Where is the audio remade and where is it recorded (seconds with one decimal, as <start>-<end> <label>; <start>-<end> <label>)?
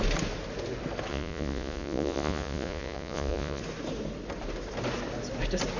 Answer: 0.0-1.1 recorded; 1.1-3.6 remade; 3.6-5.8 recorded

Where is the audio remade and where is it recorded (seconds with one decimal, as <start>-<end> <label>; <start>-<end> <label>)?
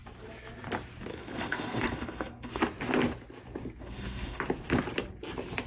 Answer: 0.0-1.1 recorded; 1.1-2.6 remade; 2.6-3.8 recorded; 3.8-4.4 remade; 4.4-5.7 recorded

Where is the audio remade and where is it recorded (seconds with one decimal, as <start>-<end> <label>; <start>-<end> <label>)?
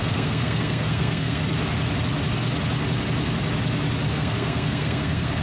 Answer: 0.0-1.4 remade; 1.4-4.1 recorded; 4.1-5.4 remade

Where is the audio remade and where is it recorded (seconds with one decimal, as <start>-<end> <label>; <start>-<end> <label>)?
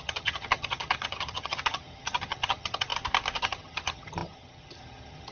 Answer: 0.0-2.9 remade; 2.9-3.4 recorded; 3.4-5.3 remade